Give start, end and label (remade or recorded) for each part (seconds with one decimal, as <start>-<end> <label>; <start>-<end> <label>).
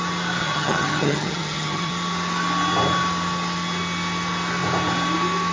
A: 0.0-0.4 recorded; 0.4-1.9 remade; 1.9-5.5 recorded